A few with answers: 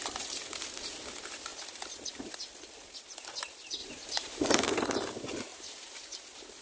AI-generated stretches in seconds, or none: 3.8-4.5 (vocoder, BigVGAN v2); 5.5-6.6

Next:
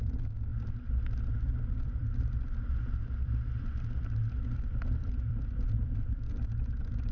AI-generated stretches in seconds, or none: 0.0-0.5 (vocoder, BigVGAN v2); 1.3-7.1

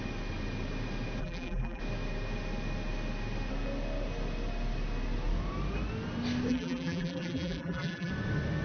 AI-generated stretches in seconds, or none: 1.2-1.8 (vocoder, BigVGAN v2); 6.5-8.1